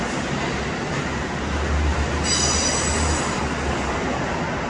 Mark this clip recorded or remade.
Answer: recorded